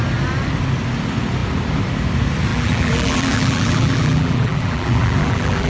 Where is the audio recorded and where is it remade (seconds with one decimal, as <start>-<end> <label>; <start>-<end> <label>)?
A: 0.0-2.5 recorded; 2.5-5.7 remade